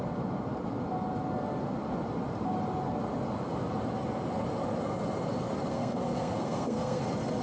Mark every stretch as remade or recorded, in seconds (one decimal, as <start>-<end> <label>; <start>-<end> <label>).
0.0-5.7 recorded; 5.7-7.0 remade; 7.0-7.4 recorded